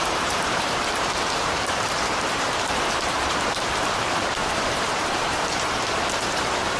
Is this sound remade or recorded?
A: remade